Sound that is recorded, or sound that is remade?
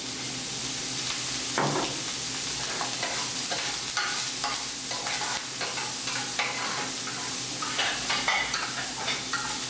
recorded